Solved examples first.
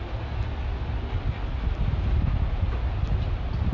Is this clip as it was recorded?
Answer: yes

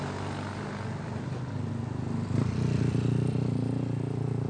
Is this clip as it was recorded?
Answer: yes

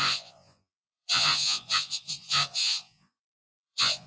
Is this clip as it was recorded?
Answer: no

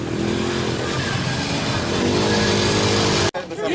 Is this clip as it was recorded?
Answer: yes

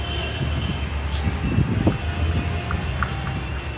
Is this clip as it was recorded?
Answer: yes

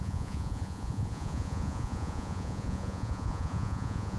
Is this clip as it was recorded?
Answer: no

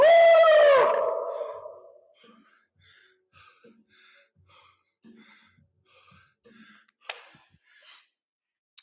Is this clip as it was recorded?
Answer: yes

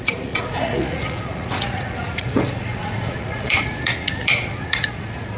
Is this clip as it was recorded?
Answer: no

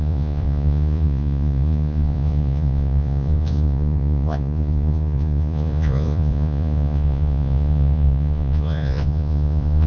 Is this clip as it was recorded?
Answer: no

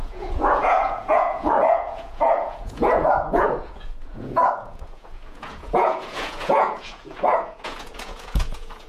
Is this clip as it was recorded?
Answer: no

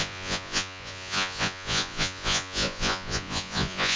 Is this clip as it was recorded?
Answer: no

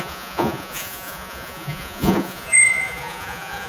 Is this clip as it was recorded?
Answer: no